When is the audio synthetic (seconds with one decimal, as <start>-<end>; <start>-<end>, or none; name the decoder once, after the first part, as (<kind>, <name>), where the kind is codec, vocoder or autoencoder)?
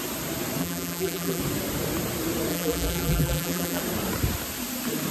0.6-1.4 (vocoder, BigVGAN v2); 2.5-3.8